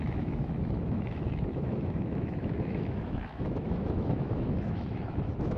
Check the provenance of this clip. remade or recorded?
remade